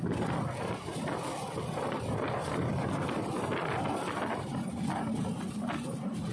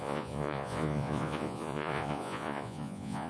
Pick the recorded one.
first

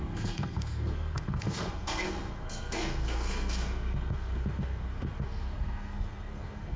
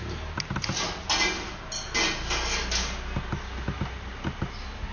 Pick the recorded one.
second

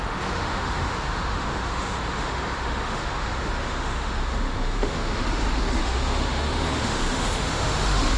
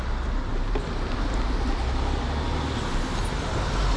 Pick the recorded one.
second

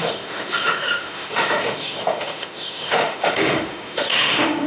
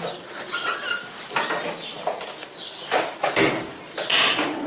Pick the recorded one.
second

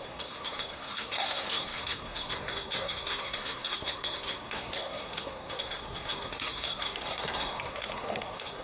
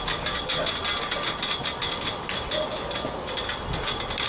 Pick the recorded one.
second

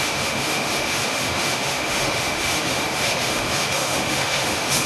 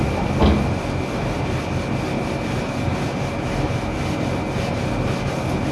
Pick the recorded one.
second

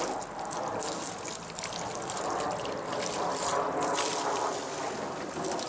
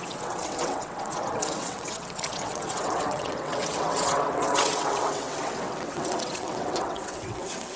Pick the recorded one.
first